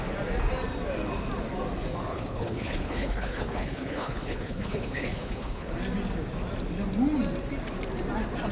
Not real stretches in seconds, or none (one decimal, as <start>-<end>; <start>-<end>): 2.1-5.7